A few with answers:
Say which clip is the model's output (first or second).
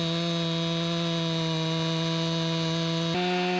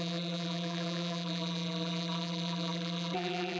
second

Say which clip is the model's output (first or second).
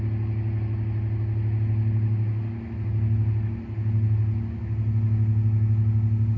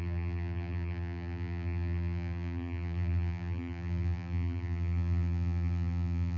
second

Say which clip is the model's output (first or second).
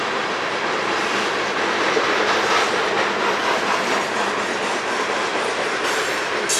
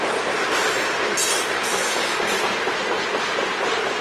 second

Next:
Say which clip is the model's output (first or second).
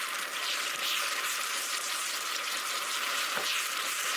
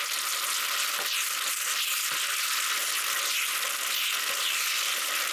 first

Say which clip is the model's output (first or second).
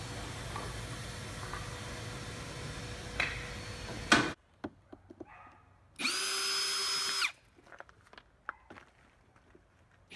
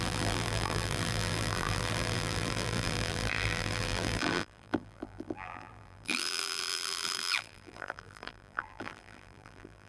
second